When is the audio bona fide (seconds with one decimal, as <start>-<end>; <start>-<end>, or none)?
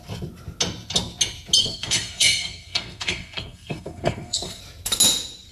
0.0-1.6; 4.6-5.5